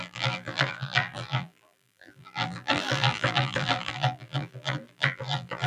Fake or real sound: fake